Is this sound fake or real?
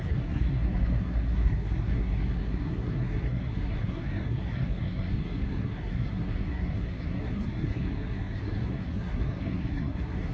fake